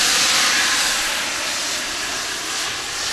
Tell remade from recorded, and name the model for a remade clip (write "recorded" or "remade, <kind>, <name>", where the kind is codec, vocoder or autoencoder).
recorded